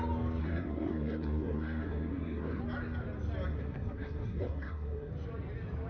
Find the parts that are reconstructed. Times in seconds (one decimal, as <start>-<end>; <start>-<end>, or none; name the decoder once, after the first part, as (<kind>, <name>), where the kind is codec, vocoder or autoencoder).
0.4-2.6 (codec, SNAC); 3.5-5.1